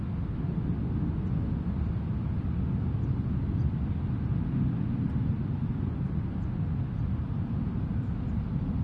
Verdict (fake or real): real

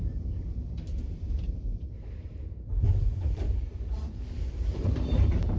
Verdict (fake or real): fake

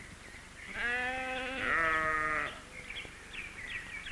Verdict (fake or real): real